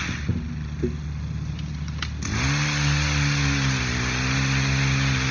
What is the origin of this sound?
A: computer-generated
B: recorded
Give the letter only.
B